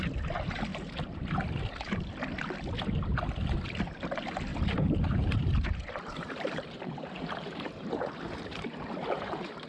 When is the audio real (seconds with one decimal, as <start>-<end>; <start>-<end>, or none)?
0.0-0.7; 1.2-4.5